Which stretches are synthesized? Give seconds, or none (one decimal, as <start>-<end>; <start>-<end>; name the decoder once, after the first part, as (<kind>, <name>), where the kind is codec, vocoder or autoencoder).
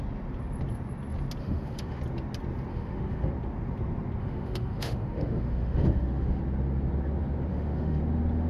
1.4-2.0 (autoencoder, DAC-VAE); 2.7-3.3; 4.2-6.4; 7.5-8.0